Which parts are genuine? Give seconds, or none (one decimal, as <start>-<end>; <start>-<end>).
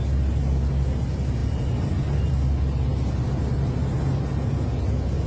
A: 0.0-5.3